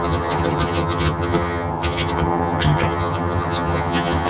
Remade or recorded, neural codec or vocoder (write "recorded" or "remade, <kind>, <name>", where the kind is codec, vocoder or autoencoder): remade, vocoder, HiFi-GAN